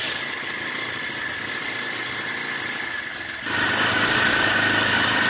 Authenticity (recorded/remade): recorded